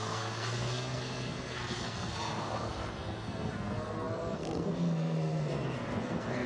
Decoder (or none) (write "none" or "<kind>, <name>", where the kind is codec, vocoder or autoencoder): codec, SNAC